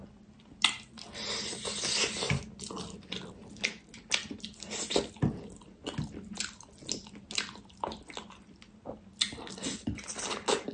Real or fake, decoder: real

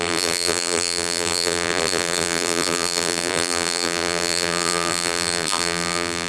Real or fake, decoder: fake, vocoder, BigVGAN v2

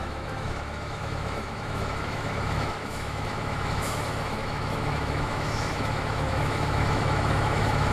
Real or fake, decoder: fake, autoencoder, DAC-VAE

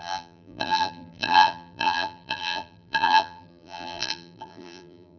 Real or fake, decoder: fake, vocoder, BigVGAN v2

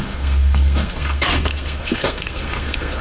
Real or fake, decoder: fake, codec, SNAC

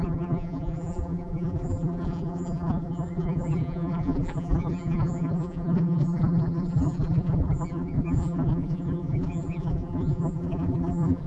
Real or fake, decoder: fake, vocoder, BigVGAN v2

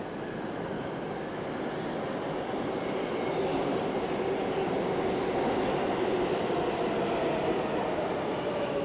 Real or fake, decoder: real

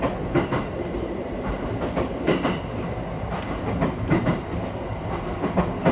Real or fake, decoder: real